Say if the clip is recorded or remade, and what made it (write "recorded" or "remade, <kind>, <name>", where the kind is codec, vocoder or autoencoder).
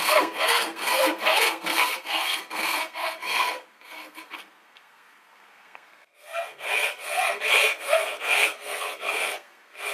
remade, codec, SNAC